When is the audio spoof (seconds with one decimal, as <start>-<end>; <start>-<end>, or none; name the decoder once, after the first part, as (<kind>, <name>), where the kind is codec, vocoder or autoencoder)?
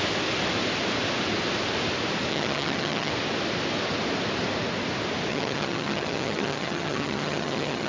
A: 2.3-3.1 (vocoder, HiFi-GAN); 5.3-7.9